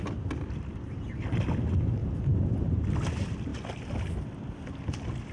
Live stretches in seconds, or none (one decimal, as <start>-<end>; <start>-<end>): 0.0-5.3